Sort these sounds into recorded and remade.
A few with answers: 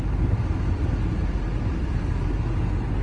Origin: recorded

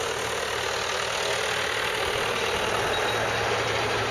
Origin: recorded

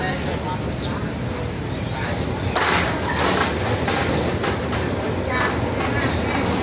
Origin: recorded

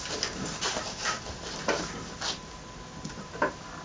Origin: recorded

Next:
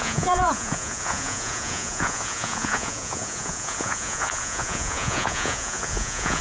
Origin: remade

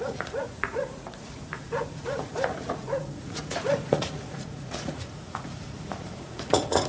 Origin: remade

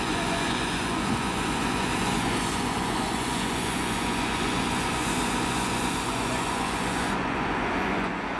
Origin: remade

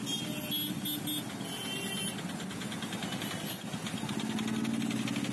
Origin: recorded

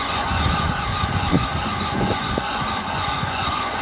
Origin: remade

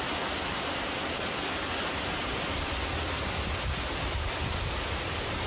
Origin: recorded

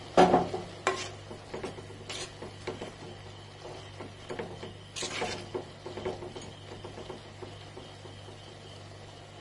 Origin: recorded